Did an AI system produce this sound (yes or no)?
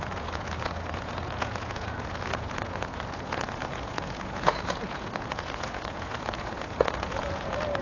yes